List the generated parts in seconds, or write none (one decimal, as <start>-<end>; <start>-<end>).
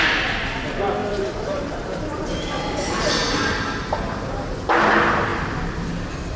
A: 1.0-4.6; 5.3-5.9